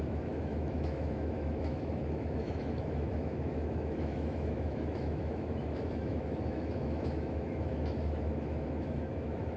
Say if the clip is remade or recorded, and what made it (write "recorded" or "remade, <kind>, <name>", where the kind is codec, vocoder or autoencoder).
remade, autoencoder, DAC-VAE